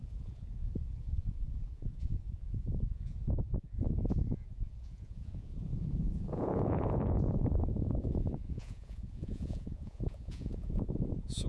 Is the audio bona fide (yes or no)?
no